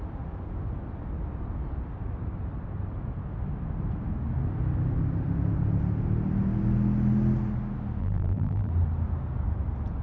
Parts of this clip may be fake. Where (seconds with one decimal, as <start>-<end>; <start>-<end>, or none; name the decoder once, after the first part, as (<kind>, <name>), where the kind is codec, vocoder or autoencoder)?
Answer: 8.0-8.7 (vocoder, BigVGAN v2)